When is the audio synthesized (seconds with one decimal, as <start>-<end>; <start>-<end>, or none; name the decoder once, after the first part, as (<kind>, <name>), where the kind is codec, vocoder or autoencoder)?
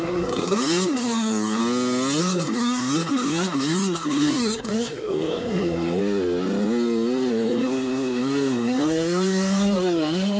0.0-1.6 (codec, SNAC); 2.2-6.0; 7.3-10.4